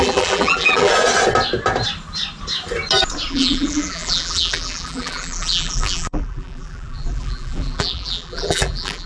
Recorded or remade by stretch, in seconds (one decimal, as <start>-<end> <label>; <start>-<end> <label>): 0.0-0.9 remade; 0.9-3.3 recorded; 3.3-9.1 remade